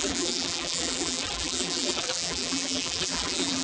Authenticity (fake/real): fake